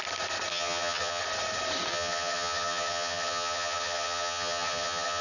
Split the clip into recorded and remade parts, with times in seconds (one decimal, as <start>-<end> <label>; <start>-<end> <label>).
0.0-0.5 recorded; 0.5-1.2 remade; 1.2-1.9 recorded; 1.9-5.2 remade